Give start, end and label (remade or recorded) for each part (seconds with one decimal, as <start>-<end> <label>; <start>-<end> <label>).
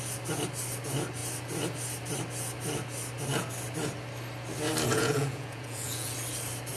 0.0-4.9 recorded; 4.9-6.1 remade; 6.1-6.8 recorded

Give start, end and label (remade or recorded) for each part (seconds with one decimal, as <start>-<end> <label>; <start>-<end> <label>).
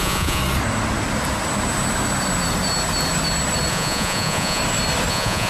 0.0-0.4 remade; 0.4-3.7 recorded; 3.7-4.6 remade; 4.6-5.1 recorded; 5.1-5.5 remade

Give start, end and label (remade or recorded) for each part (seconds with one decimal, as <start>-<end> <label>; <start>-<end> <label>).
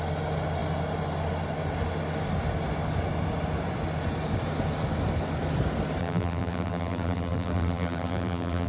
0.0-6.0 recorded; 6.0-8.7 remade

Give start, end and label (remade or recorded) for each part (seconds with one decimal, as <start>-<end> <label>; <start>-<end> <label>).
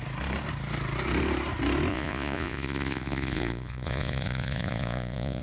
0.0-1.9 recorded; 1.9-5.4 remade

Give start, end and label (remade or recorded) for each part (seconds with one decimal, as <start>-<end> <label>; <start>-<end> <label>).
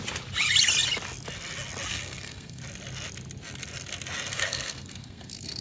0.0-1.9 recorded; 1.9-2.6 remade; 2.6-4.3 recorded; 4.3-5.6 remade